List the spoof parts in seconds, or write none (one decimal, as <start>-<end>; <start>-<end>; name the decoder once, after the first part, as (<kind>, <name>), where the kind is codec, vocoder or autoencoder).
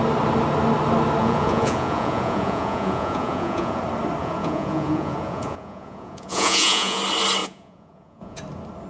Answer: 1.2-3.8 (vocoder, Vocos); 4.2-7.0; 7.4-8.4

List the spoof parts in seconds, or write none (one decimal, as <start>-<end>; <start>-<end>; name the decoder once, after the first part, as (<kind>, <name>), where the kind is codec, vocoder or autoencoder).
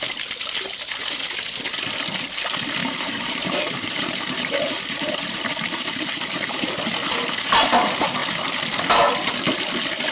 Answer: 2.8-6.8 (vocoder, BigVGAN v2)